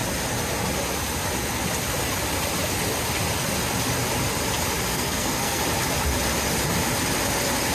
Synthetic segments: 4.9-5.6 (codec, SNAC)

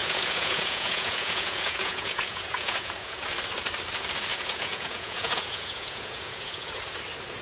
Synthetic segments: 0.0-3.3 (vocoder, Vocos); 4.3-7.0

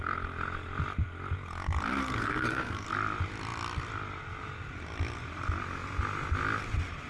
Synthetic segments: 2.0-2.9 (codec, SNAC)

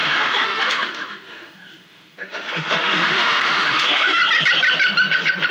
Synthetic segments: 0.0-4.2 (autoencoder, DAC-VAE)

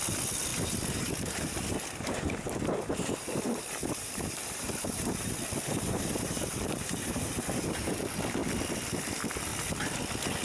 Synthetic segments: 0.5-5.3 (vocoder, BigVGAN v2); 5.7-8.0

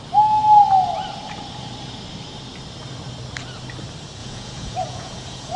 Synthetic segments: 4.2-5.6 (vocoder, Vocos)